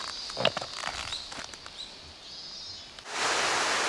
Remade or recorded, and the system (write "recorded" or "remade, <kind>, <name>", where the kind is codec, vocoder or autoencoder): recorded